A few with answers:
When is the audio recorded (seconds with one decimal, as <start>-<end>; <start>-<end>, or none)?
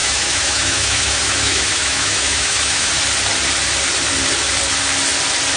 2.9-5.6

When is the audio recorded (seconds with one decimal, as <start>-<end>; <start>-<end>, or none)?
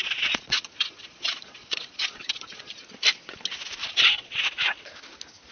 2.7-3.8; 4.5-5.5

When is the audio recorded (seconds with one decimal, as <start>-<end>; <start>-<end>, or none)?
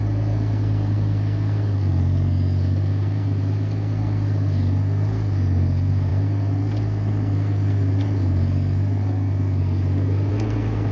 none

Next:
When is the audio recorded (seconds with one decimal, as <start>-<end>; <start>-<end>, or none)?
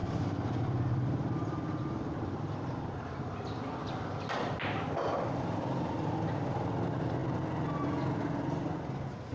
3.2-9.3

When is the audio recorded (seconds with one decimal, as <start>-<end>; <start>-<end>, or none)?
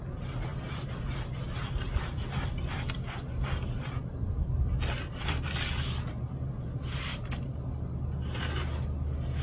0.0-9.4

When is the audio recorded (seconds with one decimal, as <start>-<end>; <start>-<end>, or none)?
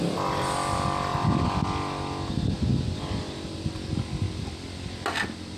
0.0-5.6